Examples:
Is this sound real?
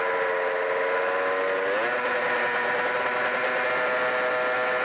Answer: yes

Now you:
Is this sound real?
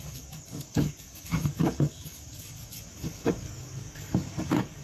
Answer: no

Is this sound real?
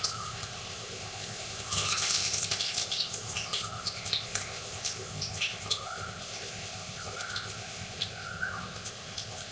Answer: no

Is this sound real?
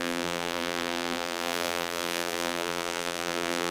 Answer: no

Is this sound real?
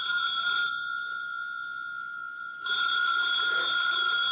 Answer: yes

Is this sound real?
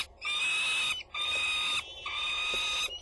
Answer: yes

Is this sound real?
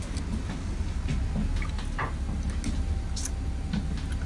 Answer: yes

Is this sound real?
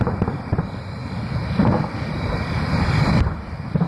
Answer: yes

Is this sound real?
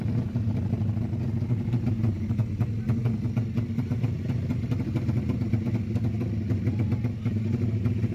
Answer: yes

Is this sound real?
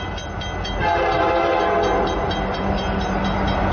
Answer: yes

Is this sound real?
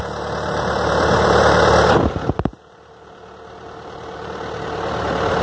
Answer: no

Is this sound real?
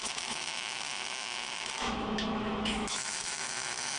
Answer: no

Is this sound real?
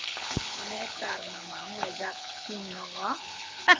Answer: no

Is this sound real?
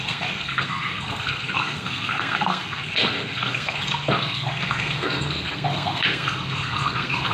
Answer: no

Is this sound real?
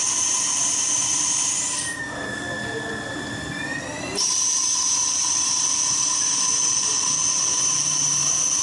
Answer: no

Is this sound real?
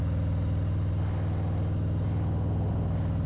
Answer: yes